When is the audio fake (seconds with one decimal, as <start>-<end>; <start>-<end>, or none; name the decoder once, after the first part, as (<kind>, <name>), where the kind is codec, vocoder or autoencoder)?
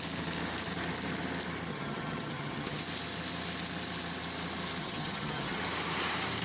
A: 1.7-2.8 (vocoder, HiFi-GAN); 4.8-5.6